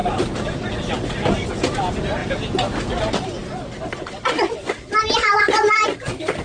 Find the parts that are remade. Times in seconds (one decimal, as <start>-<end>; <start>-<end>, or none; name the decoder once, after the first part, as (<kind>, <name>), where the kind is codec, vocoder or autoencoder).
none